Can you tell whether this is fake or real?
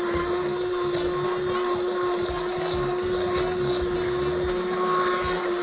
real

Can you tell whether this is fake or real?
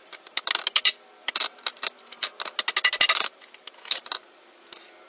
real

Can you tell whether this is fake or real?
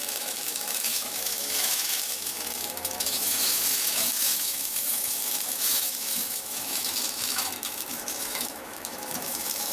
fake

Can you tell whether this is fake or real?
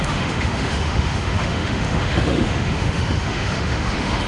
fake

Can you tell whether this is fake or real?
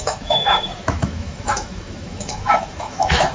fake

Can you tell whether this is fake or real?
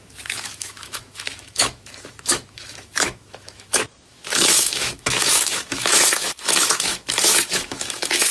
fake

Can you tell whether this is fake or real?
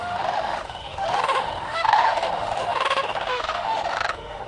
fake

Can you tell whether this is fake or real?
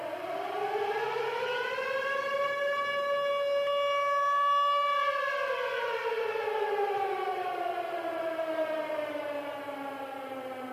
real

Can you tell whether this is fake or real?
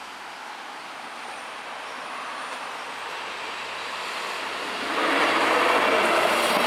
real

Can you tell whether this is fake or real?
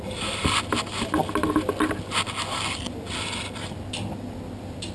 real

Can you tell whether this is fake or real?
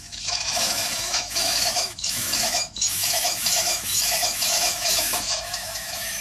fake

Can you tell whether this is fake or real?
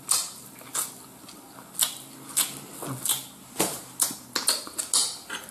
real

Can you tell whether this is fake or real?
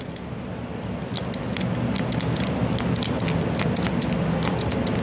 real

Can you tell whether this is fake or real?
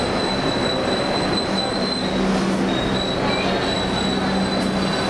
real